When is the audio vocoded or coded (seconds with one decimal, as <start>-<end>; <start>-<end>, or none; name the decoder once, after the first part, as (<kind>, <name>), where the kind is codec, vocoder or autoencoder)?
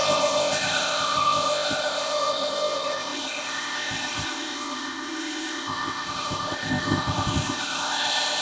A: 0.0-8.4 (codec, ZipCodec)